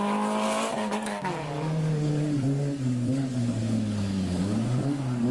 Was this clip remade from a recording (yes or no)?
yes